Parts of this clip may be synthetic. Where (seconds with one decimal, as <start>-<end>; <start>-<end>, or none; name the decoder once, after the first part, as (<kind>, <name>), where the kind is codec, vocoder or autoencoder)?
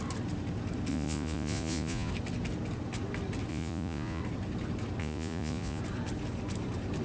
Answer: 0.9-2.1 (vocoder, Vocos); 3.5-4.2; 5.0-5.8